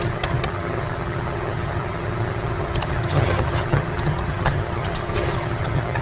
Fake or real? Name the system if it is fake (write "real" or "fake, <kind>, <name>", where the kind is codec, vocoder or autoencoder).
fake, vocoder, HiFi-GAN